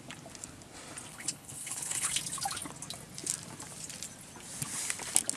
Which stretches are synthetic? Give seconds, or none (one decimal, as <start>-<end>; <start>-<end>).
1.1-2.1